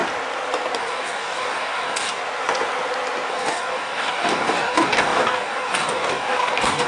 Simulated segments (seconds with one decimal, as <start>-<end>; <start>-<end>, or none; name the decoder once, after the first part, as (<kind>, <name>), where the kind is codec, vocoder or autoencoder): 0.8-2.2 (codec, DAC); 3.3-6.9